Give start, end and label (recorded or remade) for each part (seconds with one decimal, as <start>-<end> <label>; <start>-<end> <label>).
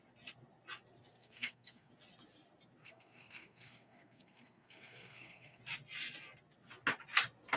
0.0-1.1 recorded; 1.1-1.9 remade; 1.9-2.8 recorded; 2.8-5.6 remade; 5.6-7.6 recorded